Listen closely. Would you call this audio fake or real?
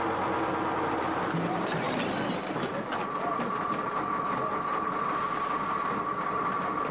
real